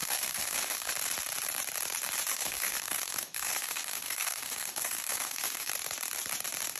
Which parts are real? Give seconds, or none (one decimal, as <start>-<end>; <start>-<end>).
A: 0.9-2.3; 5.7-6.8